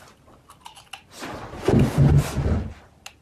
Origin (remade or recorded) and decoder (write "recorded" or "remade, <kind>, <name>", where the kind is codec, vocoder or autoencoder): recorded